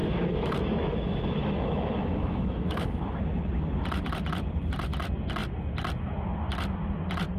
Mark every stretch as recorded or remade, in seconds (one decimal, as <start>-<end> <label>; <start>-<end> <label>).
0.0-3.2 remade; 3.2-7.4 recorded